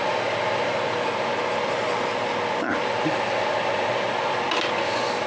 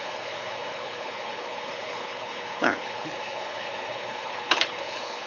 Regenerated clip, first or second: second